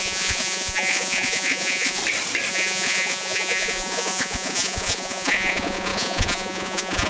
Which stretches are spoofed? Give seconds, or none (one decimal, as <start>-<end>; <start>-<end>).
0.0-2.0; 2.5-7.1

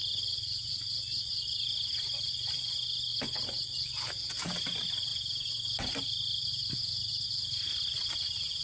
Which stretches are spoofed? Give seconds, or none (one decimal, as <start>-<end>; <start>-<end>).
none

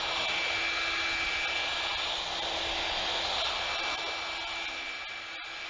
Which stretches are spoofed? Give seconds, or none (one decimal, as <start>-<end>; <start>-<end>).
none

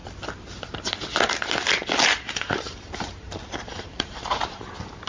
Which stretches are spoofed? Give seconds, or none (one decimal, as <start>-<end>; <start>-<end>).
2.3-5.1